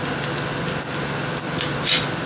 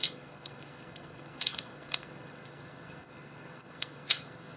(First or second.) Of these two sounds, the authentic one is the first